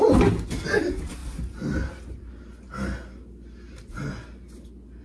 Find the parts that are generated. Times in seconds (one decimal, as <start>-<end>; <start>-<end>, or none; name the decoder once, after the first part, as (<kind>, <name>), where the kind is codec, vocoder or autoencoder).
none